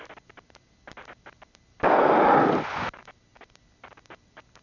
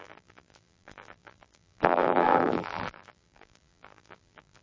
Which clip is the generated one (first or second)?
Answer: second